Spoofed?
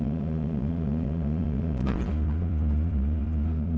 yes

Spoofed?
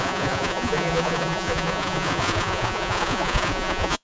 yes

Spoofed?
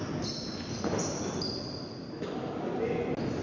no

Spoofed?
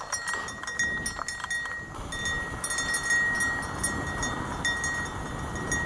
no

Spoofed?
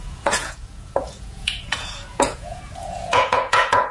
yes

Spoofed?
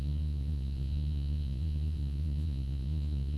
yes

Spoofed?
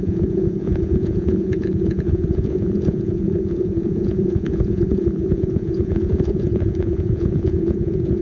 yes